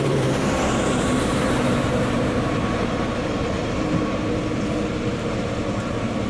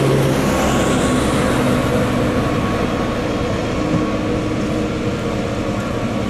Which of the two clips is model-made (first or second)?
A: first